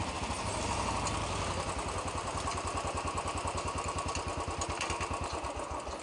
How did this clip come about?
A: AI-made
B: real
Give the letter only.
B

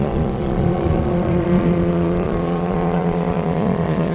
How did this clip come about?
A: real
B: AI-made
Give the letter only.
B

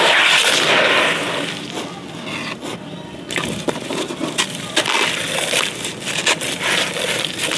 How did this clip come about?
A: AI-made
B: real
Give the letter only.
B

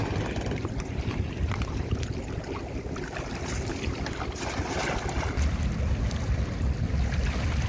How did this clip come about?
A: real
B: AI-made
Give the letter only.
B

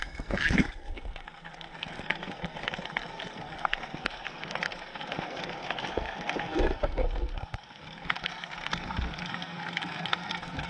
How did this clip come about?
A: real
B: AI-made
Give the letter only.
B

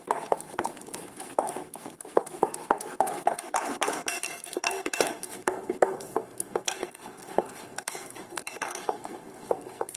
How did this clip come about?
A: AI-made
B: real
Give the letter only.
A